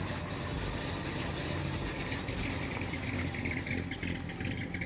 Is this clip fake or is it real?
real